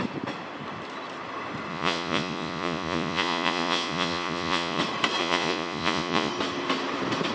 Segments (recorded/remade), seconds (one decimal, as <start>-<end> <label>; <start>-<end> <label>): 0.0-1.7 recorded; 1.7-4.8 remade; 4.8-5.2 recorded; 5.2-6.3 remade; 6.3-7.3 recorded